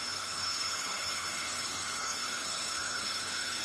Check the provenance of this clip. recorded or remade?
remade